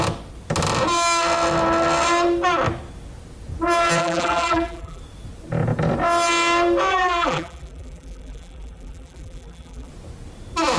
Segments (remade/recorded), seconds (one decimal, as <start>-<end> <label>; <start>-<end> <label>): 0.0-4.0 recorded; 4.0-5.0 remade; 5.0-6.9 recorded; 6.9-9.9 remade; 9.9-10.8 recorded